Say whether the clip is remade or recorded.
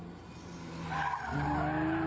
recorded